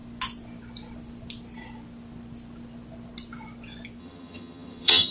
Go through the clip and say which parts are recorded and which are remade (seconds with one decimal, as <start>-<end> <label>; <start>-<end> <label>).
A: 0.0-4.0 recorded; 4.0-5.1 remade